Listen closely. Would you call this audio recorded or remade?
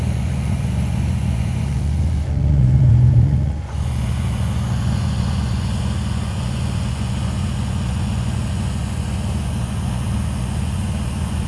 remade